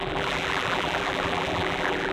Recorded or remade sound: remade